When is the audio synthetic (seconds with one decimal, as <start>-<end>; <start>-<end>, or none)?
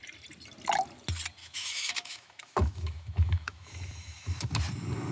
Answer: 1.4-4.5